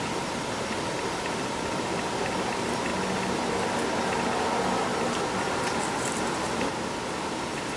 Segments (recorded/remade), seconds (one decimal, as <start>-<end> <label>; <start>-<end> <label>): 0.0-7.8 recorded